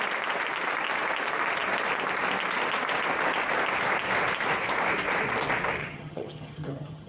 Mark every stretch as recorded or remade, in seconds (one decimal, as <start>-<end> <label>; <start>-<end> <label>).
0.0-5.8 recorded; 5.8-7.1 remade